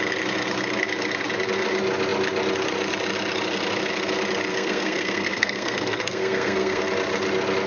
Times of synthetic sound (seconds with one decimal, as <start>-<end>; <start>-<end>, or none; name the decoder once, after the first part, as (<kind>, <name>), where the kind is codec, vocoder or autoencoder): 4.5-6.8 (codec, SNAC)